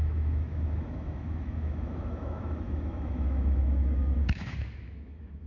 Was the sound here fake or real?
fake